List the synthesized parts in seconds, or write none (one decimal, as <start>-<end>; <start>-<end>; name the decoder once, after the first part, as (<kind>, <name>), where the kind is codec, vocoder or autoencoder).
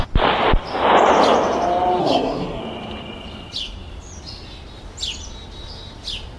2.0-2.6 (codec, SNAC)